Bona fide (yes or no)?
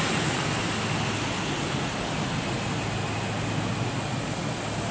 yes